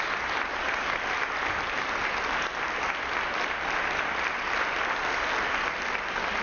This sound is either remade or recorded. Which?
recorded